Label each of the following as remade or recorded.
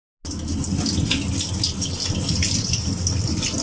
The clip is recorded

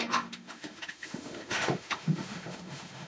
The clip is remade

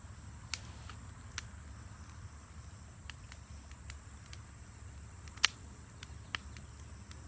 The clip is recorded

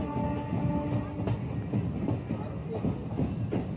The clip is recorded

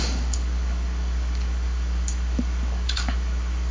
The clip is remade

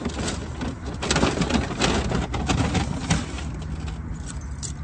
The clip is recorded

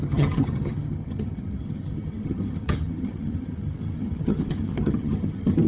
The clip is remade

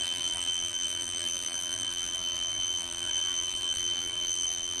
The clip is remade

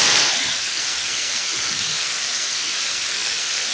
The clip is remade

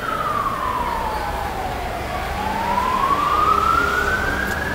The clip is recorded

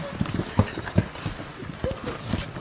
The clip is recorded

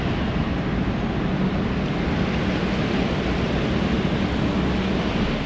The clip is recorded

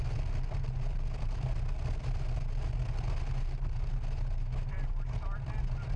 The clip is recorded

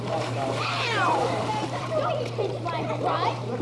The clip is remade